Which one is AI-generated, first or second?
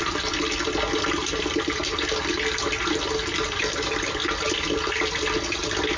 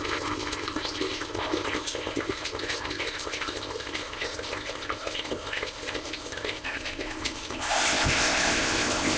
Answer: second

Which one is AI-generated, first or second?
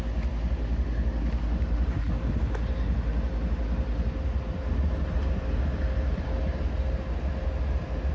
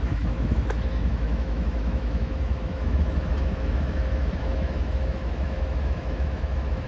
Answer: second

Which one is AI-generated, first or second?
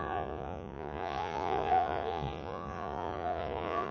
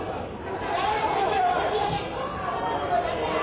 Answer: first